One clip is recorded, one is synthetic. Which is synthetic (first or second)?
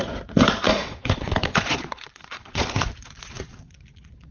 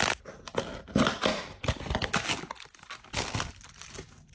first